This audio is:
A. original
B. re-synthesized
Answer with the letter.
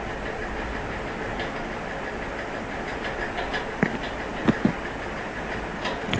A